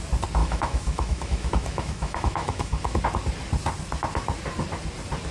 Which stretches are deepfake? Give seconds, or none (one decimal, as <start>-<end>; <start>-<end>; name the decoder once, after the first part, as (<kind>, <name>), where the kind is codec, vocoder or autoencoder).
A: 0.4-3.0 (autoencoder, DAC-VAE)